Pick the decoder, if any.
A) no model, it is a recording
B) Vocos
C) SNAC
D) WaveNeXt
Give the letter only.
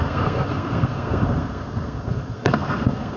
C